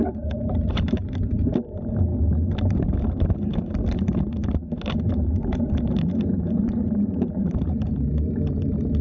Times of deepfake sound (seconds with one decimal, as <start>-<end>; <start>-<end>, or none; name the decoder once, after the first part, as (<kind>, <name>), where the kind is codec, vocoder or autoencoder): 0.0-2.1 (vocoder, BigVGAN v2); 5.1-9.0